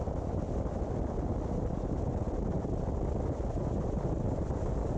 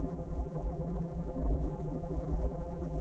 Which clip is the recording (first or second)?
first